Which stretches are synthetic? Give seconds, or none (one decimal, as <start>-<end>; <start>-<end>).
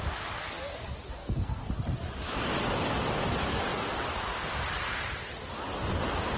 1.2-1.7